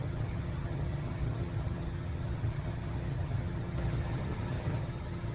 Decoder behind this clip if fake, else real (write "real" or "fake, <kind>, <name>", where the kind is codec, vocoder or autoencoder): fake, vocoder, HiFi-GAN